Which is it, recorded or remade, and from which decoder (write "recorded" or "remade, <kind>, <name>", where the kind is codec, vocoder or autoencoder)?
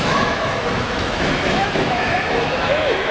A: remade, autoencoder, DAC-VAE